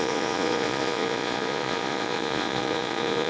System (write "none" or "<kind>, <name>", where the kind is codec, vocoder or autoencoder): vocoder, Vocos